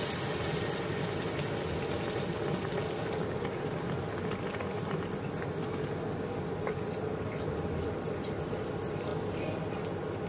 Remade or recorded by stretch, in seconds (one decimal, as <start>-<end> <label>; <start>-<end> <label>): 0.0-10.3 recorded